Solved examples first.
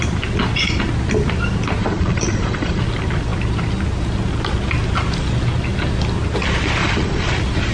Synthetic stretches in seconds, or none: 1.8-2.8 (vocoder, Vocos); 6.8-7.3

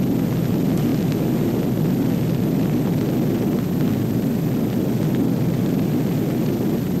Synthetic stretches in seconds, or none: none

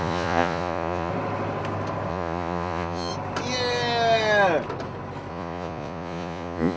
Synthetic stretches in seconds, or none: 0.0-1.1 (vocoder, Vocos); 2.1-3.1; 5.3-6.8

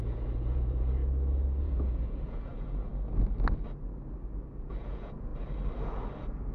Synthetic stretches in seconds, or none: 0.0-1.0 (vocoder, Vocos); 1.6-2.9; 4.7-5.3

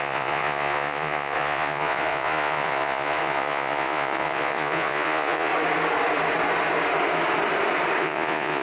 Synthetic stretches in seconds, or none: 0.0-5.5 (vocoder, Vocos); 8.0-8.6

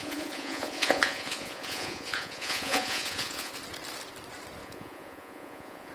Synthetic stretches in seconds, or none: 0.0-3.5 (vocoder, Vocos); 4.6-5.9

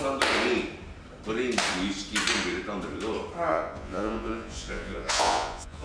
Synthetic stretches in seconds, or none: 3.5-5.8 (vocoder, Vocos)

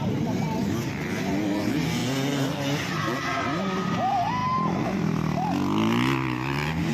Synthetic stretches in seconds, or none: none